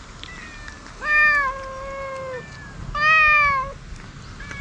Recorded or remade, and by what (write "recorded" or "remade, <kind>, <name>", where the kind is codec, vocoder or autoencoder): recorded